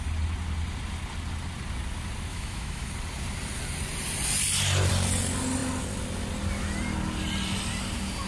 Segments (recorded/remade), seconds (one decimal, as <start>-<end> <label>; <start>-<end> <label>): 0.0-2.3 recorded; 2.3-2.9 remade; 2.9-8.3 recorded